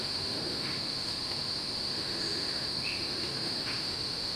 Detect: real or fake fake